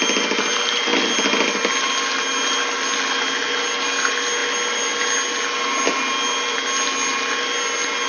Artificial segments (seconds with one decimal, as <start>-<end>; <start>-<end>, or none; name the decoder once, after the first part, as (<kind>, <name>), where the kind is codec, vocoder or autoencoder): none